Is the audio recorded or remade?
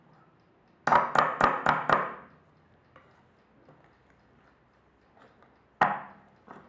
recorded